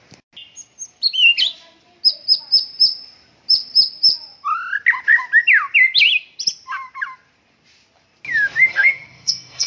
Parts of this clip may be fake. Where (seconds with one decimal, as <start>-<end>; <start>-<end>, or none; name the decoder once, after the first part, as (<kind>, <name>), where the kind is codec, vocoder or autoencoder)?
8.7-9.7 (codec, SNAC)